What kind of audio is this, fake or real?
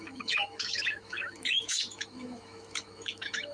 fake